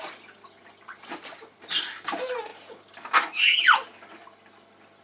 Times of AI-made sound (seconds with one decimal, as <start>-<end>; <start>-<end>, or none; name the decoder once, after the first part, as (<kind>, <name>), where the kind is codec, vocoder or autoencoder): none